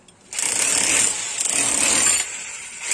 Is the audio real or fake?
real